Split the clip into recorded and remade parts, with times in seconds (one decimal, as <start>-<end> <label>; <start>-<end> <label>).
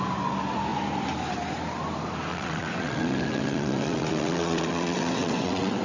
0.0-2.3 recorded; 2.3-5.8 remade